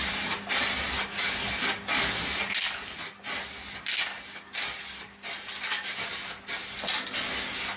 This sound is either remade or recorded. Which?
recorded